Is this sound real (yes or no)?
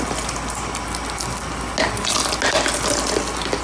yes